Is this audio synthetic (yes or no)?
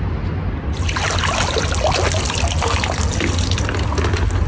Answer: no